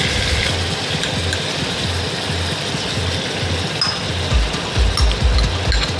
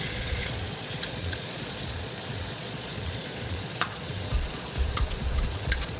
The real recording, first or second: first